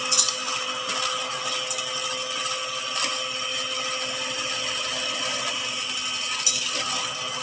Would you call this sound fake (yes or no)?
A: no